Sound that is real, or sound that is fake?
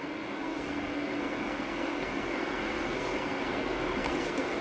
fake